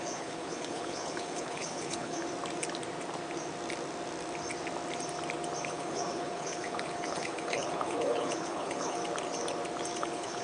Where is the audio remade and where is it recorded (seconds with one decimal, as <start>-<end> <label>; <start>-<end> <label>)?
0.0-2.2 remade; 2.2-5.7 recorded; 5.7-9.0 remade; 9.0-10.0 recorded; 10.0-10.4 remade